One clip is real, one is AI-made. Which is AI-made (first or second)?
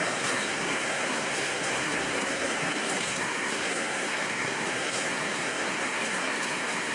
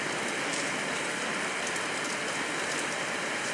first